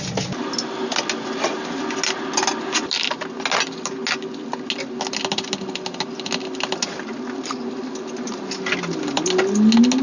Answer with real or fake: real